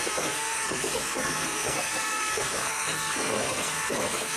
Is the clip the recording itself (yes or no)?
no